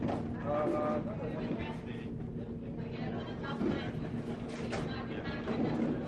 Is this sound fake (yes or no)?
no